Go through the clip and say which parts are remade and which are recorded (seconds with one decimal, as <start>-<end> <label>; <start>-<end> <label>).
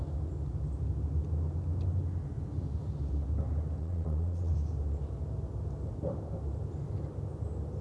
0.0-3.8 recorded; 3.8-4.5 remade; 4.5-7.8 recorded